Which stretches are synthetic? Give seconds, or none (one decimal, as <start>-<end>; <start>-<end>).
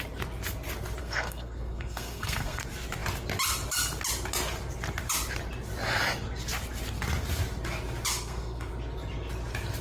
1.0-2.6; 8.1-8.7